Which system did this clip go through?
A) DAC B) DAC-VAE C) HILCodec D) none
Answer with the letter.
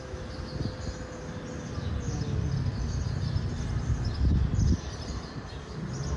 D